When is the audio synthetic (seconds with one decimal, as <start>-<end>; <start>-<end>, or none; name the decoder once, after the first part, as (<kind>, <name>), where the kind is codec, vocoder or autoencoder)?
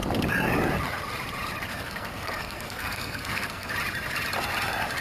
1.7-3.7 (codec, SNAC)